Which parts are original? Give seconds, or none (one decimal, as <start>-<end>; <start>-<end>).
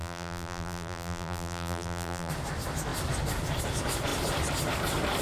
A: 2.3-5.2